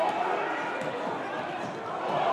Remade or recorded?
recorded